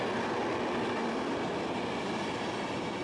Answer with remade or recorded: recorded